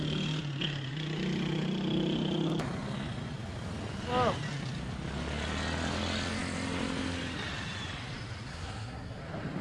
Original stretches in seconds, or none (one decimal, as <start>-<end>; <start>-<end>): 0.0-8.5; 9.2-9.6